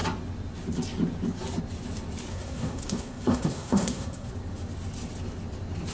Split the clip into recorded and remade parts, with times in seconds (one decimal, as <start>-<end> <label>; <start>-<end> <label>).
0.0-2.3 recorded; 2.3-4.3 remade; 4.3-5.9 recorded